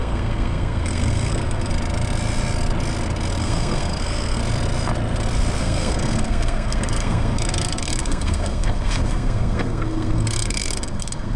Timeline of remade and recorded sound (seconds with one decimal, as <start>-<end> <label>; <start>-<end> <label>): 0.0-1.7 remade; 1.7-3.4 recorded; 3.4-4.4 remade; 4.4-5.6 recorded; 5.6-11.4 remade